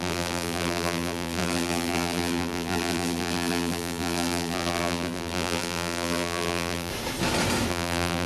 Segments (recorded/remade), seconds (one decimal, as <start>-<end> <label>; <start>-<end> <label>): 0.0-6.9 remade; 6.9-7.7 recorded; 7.7-8.3 remade